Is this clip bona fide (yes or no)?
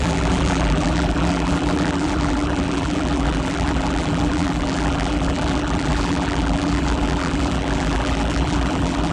no